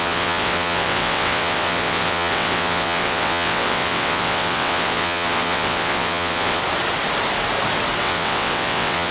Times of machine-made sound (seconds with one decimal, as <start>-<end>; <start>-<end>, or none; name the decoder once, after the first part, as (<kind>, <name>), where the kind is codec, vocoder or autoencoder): 0.0-6.6 (vocoder, WaveNeXt); 8.0-9.1